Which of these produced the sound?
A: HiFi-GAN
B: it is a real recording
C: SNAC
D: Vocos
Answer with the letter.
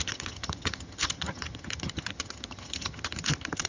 A